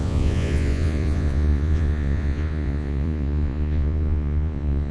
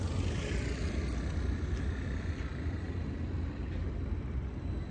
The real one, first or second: second